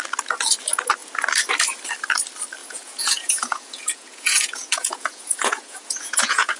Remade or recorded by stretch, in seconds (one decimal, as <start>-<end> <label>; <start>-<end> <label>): 0.0-2.6 recorded; 2.6-6.6 remade